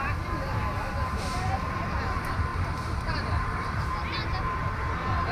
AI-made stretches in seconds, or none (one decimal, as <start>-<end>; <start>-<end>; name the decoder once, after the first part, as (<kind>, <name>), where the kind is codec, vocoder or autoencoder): 2.5-4.2 (vocoder, BigVGAN v2)